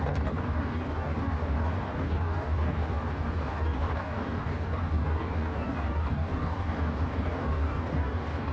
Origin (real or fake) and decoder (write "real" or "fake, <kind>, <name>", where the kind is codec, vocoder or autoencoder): fake, codec, DAC